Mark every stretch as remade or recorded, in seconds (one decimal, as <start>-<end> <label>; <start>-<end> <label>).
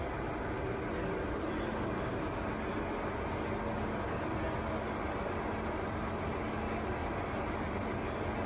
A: 0.0-8.5 recorded